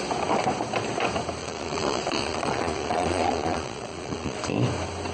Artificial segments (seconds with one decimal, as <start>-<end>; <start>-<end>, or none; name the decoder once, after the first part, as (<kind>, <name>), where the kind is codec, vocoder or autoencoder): 1.4-4.5 (vocoder, Vocos)